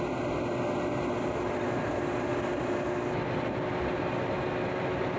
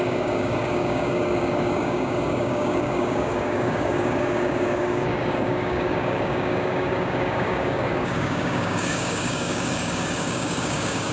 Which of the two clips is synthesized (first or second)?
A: second